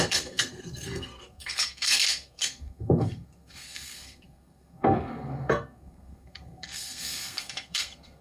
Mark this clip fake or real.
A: fake